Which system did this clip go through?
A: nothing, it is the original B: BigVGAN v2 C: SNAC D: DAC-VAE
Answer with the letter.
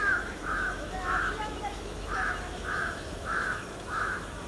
D